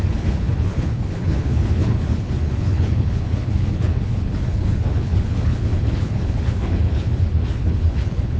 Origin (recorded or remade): remade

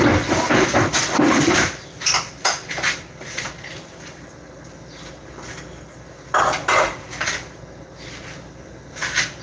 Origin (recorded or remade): recorded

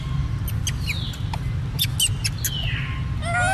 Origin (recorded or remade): recorded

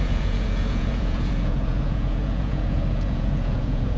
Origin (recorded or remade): remade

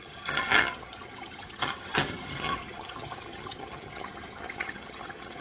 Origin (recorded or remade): remade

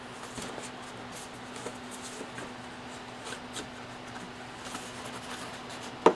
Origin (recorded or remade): recorded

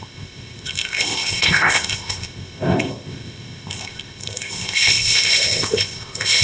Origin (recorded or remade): remade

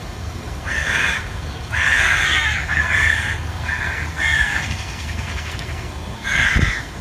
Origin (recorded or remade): remade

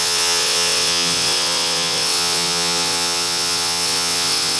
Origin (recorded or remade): remade